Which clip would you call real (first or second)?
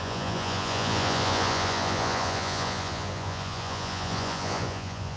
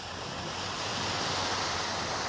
second